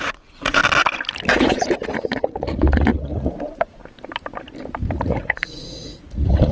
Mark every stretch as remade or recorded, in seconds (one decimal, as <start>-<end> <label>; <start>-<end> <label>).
0.0-0.6 remade; 0.6-1.3 recorded; 1.3-3.8 remade; 3.8-4.9 recorded; 4.9-6.5 remade